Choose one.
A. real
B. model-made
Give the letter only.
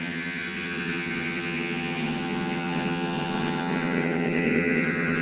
B